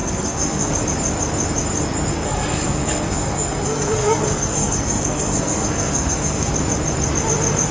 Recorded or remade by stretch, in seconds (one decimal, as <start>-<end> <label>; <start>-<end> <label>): 0.0-0.7 remade; 0.7-2.1 recorded; 2.1-6.5 remade; 6.5-7.7 recorded